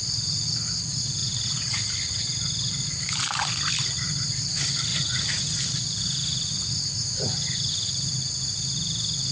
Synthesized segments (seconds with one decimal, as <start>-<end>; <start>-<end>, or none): 1.2-1.9; 4.9-5.4; 6.5-7.1